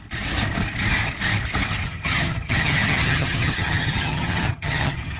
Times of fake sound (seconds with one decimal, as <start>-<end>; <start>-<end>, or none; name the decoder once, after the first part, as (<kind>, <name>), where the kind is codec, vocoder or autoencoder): 1.8-5.2 (vocoder, HiFi-GAN)

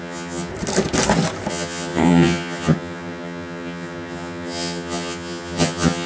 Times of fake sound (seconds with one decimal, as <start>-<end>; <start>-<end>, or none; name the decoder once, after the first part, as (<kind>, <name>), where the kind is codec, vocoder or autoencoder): 0.0-0.5 (vocoder, HiFi-GAN); 1.5-6.1

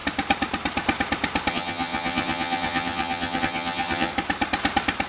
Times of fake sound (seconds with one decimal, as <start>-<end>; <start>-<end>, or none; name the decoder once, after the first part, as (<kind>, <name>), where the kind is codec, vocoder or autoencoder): 1.5-4.1 (vocoder, HiFi-GAN)

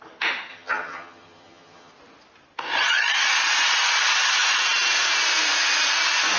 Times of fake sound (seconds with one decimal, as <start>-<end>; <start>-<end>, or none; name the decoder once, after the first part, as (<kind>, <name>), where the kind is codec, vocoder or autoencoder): 0.5-1.9 (vocoder, HiFi-GAN)